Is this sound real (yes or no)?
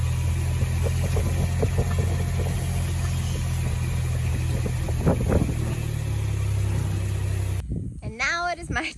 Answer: yes